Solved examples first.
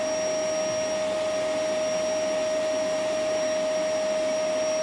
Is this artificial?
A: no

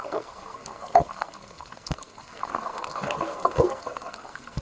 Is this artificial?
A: yes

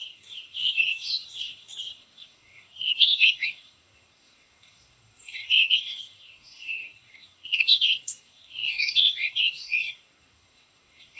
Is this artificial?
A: yes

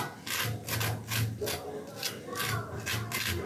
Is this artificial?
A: no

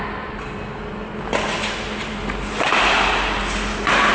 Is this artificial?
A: no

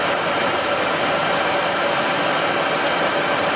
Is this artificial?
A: no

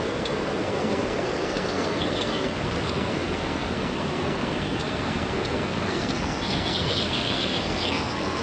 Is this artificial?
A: yes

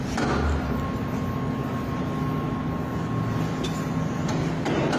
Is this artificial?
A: no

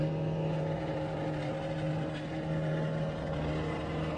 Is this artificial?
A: no